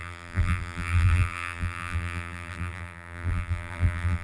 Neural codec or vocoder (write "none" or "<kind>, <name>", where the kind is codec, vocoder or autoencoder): vocoder, BigVGAN v2